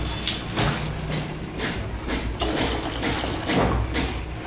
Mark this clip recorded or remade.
recorded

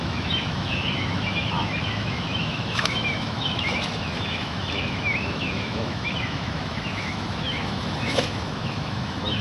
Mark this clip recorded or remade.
remade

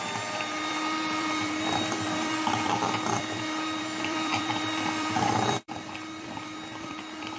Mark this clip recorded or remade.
remade